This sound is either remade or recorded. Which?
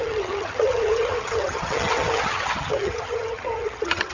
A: remade